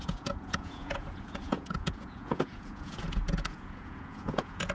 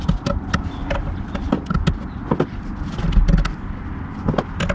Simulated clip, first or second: first